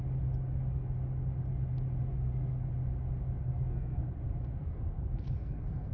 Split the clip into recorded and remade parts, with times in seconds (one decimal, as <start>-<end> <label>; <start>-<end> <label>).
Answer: 0.0-2.1 recorded; 2.1-2.7 remade; 2.7-3.5 recorded; 3.5-4.1 remade; 4.1-4.6 recorded; 4.6-5.9 remade